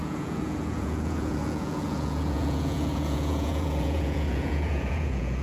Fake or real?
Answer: fake